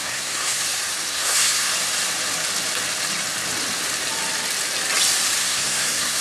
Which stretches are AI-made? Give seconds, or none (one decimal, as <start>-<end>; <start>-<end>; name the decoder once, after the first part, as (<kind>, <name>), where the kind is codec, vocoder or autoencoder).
0.0-0.6 (codec, SNAC); 1.1-1.7; 5.4-6.2